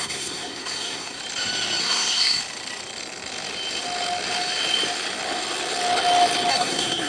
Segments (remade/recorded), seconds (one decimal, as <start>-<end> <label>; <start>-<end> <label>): 0.0-1.2 remade; 1.2-1.8 recorded; 1.8-2.4 remade; 2.4-6.5 recorded; 6.5-7.1 remade